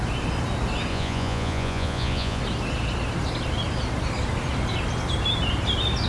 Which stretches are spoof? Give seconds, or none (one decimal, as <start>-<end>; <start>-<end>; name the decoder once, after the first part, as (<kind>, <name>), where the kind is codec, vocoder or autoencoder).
0.9-2.4 (vocoder, Vocos)